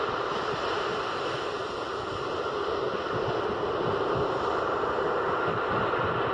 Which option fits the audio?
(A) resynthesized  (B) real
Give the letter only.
B